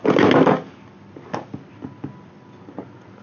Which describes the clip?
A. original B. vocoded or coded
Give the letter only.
A